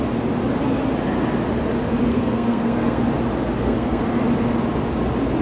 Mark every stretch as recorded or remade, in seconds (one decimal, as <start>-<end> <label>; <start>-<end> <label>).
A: 0.0-2.1 recorded; 2.1-3.0 remade; 3.0-3.4 recorded; 3.4-4.0 remade; 4.0-5.4 recorded